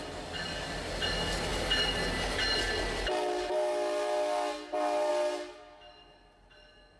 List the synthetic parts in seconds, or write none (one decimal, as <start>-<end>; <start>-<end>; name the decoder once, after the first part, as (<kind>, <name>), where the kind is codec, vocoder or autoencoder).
none